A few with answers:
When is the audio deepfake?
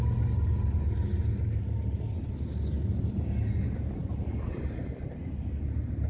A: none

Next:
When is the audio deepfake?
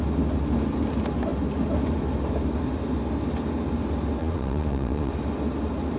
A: 4.2-5.1 (vocoder, Vocos)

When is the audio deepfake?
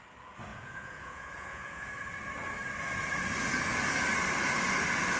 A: 0.5-1.9 (vocoder, Vocos)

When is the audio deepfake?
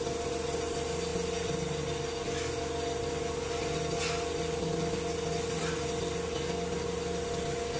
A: none